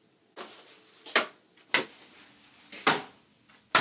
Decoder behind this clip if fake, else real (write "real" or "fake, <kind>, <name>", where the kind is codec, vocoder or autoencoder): real